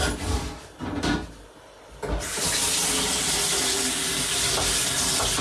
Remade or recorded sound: recorded